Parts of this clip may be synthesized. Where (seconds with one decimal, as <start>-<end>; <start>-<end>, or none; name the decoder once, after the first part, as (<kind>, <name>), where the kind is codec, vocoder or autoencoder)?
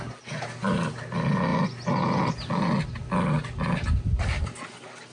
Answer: none